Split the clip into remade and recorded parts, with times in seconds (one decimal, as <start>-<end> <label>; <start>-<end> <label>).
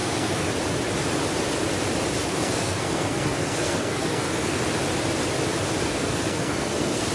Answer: 0.0-0.5 remade; 0.5-2.2 recorded; 2.2-4.6 remade; 4.6-5.9 recorded; 5.9-7.1 remade